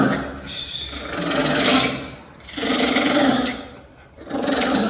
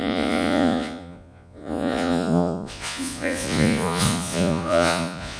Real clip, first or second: first